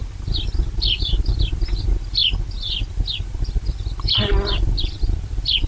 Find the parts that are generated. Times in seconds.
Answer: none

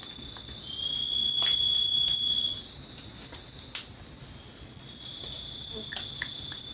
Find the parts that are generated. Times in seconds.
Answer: 4.4-5.1 (vocoder, Vocos)

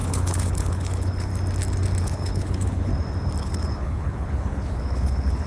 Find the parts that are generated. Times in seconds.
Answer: 0.0-1.3 (codec, HILCodec); 2.0-2.9; 3.4-5.5

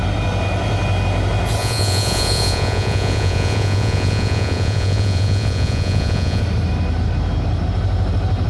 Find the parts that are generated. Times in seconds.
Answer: 1.6-6.4 (vocoder, Vocos)

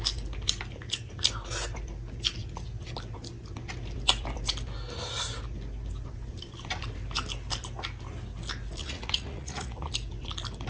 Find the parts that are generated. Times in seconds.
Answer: 8.8-9.9 (vocoder, Vocos)